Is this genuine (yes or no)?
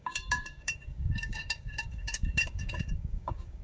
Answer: no